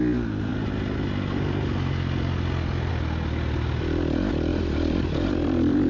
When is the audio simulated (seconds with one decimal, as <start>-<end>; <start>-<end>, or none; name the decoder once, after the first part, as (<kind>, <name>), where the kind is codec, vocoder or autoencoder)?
4.5-5.9 (vocoder, BigVGAN v2)